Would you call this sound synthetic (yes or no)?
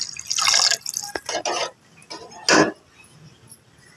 no